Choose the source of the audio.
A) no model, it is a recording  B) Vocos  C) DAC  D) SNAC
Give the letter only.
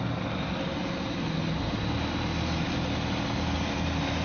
A